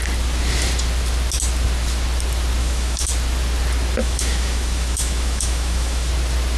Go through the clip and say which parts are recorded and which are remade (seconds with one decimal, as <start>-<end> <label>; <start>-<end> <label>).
0.0-2.6 recorded; 2.6-3.1 remade; 3.1-4.0 recorded; 4.0-6.1 remade; 6.1-6.6 recorded